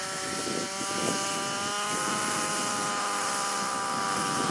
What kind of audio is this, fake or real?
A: real